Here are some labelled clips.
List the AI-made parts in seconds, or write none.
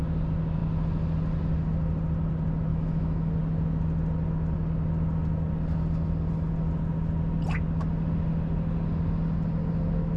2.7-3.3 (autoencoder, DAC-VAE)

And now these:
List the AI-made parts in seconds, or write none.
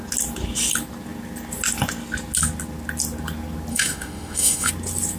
3.7-4.7 (autoencoder, DAC-VAE)